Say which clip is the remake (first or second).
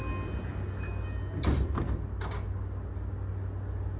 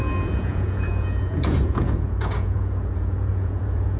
second